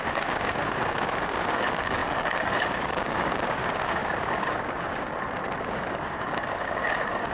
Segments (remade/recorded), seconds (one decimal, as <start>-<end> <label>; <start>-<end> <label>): 0.0-5.1 remade; 5.1-5.6 recorded; 5.6-7.3 remade